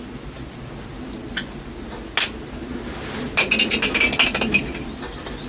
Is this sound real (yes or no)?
yes